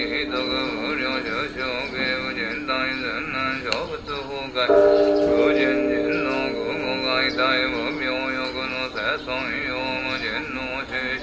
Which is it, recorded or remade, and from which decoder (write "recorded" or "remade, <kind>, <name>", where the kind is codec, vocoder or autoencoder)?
recorded